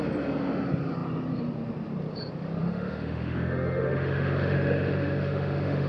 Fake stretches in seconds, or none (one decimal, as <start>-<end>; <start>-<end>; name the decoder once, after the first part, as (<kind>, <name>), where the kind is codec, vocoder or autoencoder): 2.6-5.9 (autoencoder, DAC-VAE)

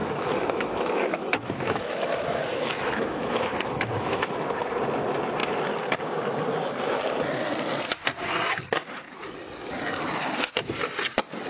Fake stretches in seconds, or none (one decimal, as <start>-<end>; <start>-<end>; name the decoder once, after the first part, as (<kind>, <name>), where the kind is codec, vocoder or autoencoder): 0.0-4.2 (autoencoder, DAC-VAE)

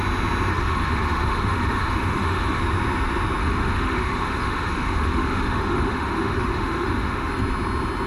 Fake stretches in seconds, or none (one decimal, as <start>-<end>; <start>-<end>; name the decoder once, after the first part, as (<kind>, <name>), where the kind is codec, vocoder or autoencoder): 0.5-2.6 (autoencoder, DAC-VAE); 3.4-7.3

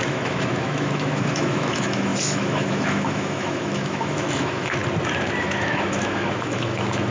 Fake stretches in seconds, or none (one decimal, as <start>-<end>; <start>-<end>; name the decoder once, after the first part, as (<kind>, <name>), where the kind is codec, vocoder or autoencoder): 0.0-4.8 (autoencoder, DAC-VAE); 5.4-7.1